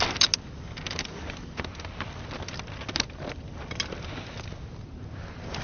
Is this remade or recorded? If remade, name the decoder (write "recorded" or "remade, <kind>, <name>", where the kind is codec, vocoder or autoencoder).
recorded